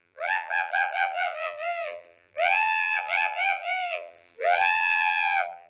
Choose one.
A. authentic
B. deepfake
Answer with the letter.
B